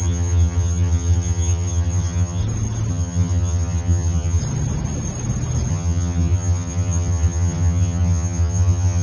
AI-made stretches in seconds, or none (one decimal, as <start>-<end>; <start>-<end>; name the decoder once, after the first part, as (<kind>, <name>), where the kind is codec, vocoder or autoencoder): 0.0-2.4 (vocoder, HiFi-GAN); 2.9-4.4; 5.7-9.0